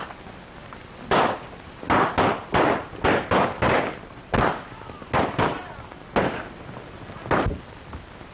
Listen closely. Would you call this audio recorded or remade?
recorded